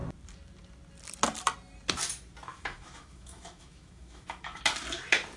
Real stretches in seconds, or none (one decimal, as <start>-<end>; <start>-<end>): 0.0-2.5; 4.6-5.4